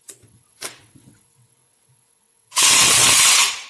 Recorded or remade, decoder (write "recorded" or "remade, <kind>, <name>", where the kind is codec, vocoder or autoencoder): remade, vocoder, WaveNeXt